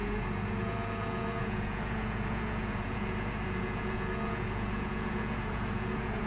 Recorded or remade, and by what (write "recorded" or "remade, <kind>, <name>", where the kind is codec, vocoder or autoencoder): remade, vocoder, Vocos